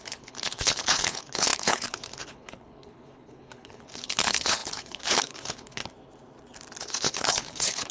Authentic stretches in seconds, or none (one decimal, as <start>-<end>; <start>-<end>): 5.8-6.8